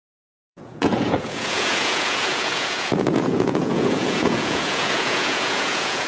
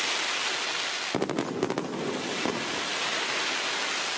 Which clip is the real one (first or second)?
second